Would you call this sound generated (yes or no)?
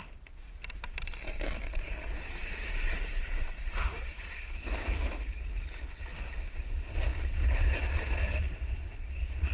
no